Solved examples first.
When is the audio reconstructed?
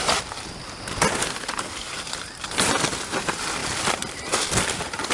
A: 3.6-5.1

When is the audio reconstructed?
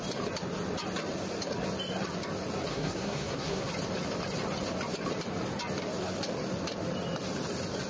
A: 2.7-3.7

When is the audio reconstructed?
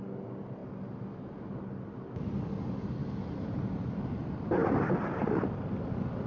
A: none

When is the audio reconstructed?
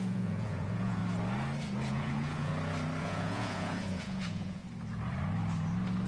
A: 0.0-1.0; 1.9-2.5; 3.0-4.6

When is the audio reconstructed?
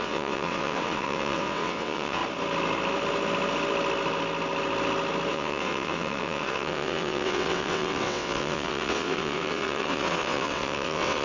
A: 0.0-2.2; 5.3-11.2